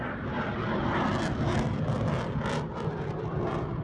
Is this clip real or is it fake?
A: real